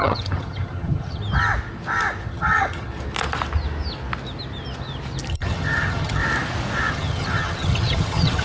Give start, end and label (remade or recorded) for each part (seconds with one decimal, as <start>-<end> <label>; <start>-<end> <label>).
0.0-1.2 remade; 1.2-2.3 recorded; 2.3-2.9 remade; 2.9-5.3 recorded; 5.3-6.2 remade; 6.2-6.9 recorded; 6.9-8.4 remade